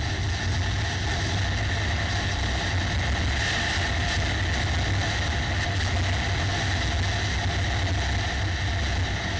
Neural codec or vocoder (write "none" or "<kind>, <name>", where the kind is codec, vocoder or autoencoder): none